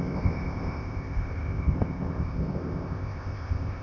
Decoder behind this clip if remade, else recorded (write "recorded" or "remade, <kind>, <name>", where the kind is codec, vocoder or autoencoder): remade, codec, ZipCodec